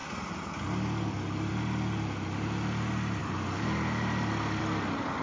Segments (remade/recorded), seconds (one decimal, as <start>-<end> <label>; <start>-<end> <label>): 0.0-5.2 recorded

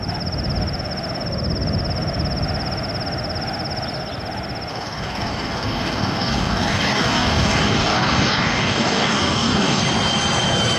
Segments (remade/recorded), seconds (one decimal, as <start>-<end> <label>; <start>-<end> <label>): 0.0-4.7 recorded; 4.7-9.8 remade; 9.8-10.8 recorded

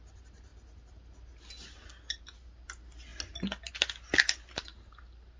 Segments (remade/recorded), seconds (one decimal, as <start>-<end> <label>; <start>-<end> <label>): 0.0-5.4 recorded

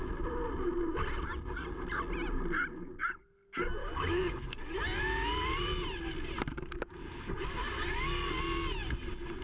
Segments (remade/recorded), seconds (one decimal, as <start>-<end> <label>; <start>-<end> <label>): 0.0-3.8 recorded; 3.8-4.8 remade; 4.8-6.5 recorded; 6.5-8.4 remade; 8.4-9.4 recorded

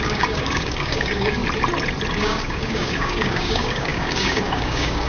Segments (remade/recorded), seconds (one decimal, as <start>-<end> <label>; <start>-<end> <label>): 0.0-1.4 remade; 1.4-2.1 recorded; 2.1-5.1 remade